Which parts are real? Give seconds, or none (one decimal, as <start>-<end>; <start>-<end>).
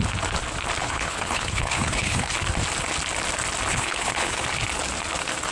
0.0-0.8; 2.3-3.7; 4.4-5.5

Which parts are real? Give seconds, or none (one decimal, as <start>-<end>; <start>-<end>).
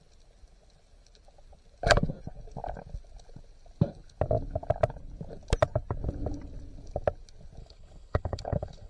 0.0-7.6